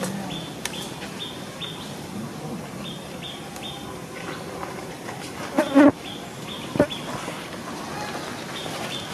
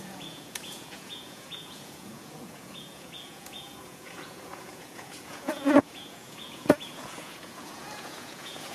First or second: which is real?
first